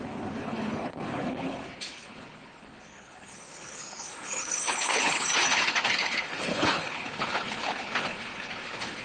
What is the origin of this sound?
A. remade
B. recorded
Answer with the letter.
A